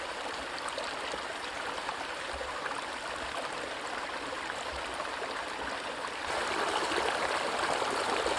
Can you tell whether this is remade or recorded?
recorded